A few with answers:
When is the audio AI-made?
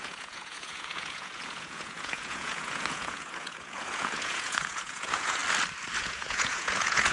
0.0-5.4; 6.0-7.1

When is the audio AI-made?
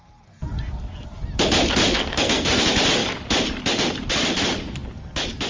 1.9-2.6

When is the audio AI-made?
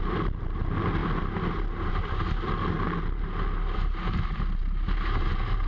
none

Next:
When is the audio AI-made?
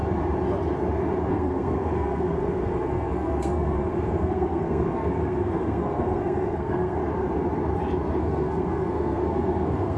1.3-7.0; 8.2-10.0